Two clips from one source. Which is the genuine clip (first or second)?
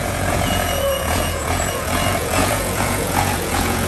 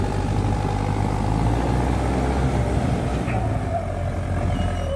second